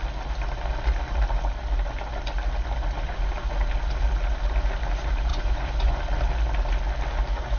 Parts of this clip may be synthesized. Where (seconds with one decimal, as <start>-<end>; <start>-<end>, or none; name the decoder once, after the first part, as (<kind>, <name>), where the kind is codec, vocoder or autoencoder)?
5.3-6.0 (vocoder, Vocos)